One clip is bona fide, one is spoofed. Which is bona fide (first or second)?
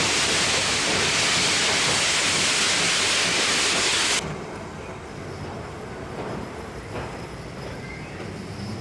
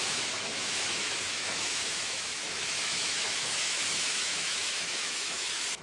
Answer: first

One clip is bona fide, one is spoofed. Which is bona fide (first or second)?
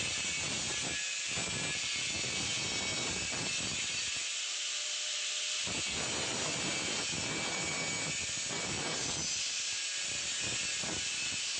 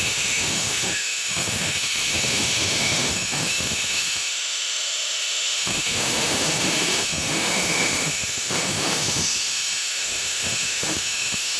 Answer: first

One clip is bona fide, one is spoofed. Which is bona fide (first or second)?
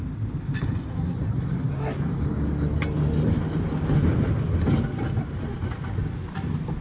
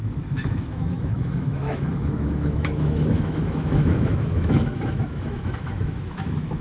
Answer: first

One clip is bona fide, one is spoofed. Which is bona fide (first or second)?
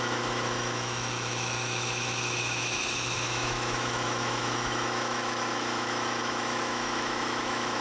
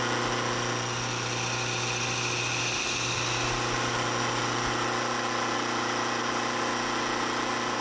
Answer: second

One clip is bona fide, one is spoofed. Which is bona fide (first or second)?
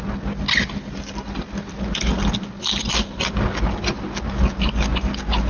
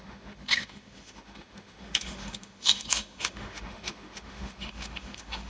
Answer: first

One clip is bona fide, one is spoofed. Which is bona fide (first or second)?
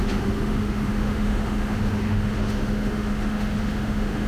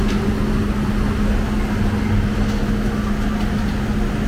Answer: second